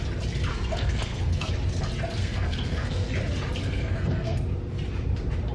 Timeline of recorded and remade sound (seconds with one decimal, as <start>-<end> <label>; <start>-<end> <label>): 0.0-0.5 recorded; 0.5-1.5 remade; 1.5-2.2 recorded; 2.2-3.1 remade; 3.1-3.6 recorded; 3.6-4.4 remade; 4.4-5.5 recorded

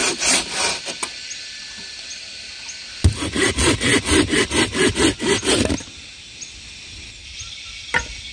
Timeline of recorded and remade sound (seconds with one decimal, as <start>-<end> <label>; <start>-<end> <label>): 0.0-8.3 recorded

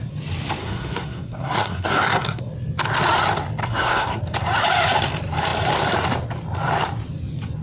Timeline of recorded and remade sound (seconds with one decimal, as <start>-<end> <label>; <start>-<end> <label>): 0.0-0.6 recorded; 0.6-2.4 remade; 2.4-3.6 recorded; 3.6-4.2 remade; 4.2-7.6 recorded

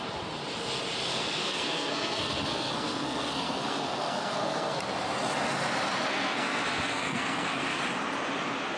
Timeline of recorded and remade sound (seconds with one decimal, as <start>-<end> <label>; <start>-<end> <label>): 0.0-1.1 recorded; 1.1-4.8 remade; 4.8-6.1 recorded; 6.1-7.8 remade; 7.8-8.8 recorded